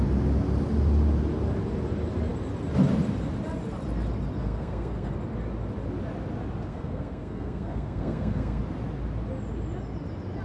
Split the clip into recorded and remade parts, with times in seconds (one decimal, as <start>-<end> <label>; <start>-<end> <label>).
0.0-4.4 recorded; 4.4-5.1 remade; 5.1-6.7 recorded; 6.7-8.6 remade; 8.6-10.4 recorded